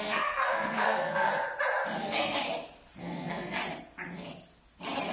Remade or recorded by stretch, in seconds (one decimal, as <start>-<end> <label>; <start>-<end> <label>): 0.0-1.3 remade; 1.3-2.0 recorded; 2.0-2.4 remade; 2.4-3.0 recorded; 3.0-3.6 remade; 3.6-5.1 recorded